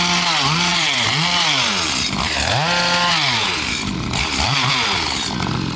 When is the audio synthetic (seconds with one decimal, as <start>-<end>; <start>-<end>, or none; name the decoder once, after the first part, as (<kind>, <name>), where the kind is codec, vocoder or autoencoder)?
none